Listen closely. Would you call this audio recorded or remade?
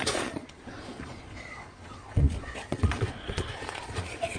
remade